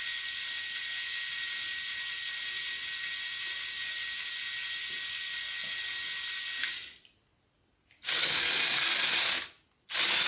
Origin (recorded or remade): recorded